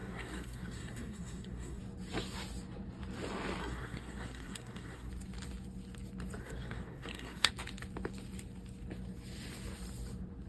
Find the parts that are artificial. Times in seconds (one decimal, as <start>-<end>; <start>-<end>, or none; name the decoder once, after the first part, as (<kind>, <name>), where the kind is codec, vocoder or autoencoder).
0.0-1.8 (codec, SNAC); 3.6-5.1; 6.4-7.5